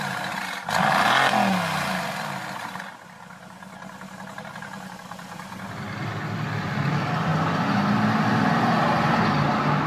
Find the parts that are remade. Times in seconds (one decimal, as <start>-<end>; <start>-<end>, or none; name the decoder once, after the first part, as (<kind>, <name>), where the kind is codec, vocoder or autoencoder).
none